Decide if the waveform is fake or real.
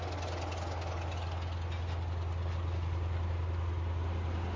real